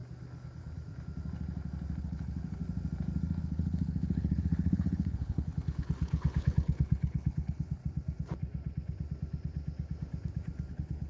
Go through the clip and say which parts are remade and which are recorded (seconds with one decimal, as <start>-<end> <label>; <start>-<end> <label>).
0.0-2.0 recorded; 2.0-2.6 remade; 2.6-3.4 recorded; 3.4-7.8 remade; 7.8-10.7 recorded; 10.7-11.1 remade